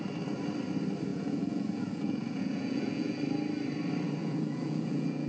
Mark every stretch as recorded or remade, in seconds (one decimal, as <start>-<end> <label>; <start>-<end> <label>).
0.0-1.1 recorded; 1.1-3.2 remade; 3.2-4.2 recorded; 4.2-5.3 remade